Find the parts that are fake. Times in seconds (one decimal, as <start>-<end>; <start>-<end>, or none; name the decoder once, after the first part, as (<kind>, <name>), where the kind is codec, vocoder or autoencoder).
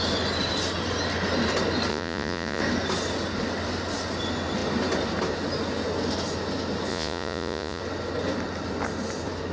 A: 1.9-2.6 (vocoder, Vocos); 6.9-7.8